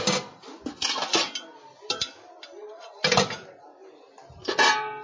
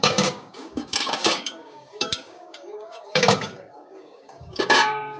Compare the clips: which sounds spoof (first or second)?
second